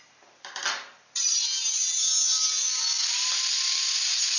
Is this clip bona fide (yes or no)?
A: no